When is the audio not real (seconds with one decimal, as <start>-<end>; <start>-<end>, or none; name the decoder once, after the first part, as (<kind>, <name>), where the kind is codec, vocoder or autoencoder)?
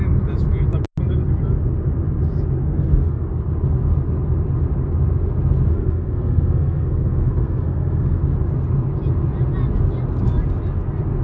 2.6-3.2 (codec, SNAC); 5.7-8.2